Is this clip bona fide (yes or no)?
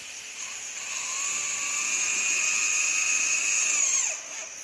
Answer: yes